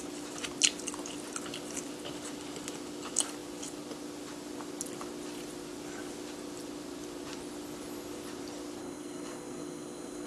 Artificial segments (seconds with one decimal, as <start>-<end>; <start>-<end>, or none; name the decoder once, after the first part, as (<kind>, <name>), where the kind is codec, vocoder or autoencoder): 8.8-10.3 (codec, SNAC)